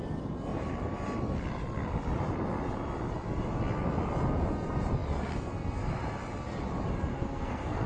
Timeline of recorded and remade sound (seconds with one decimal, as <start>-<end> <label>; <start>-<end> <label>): 0.0-7.1 recorded; 7.1-7.9 remade